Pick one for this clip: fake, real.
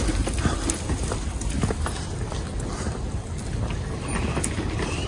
real